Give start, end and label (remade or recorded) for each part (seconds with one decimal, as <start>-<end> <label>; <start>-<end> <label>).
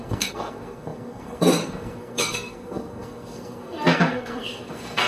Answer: 0.0-5.1 remade